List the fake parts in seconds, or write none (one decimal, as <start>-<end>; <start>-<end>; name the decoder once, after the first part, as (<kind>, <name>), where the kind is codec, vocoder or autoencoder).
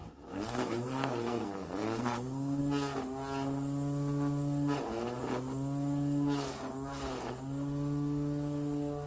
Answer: 0.0-2.6 (codec, SNAC)